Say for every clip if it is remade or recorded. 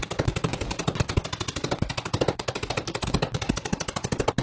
recorded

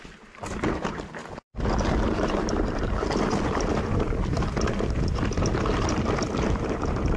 recorded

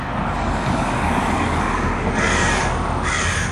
remade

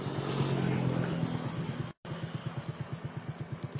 recorded